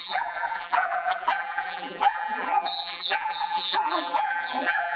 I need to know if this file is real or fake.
fake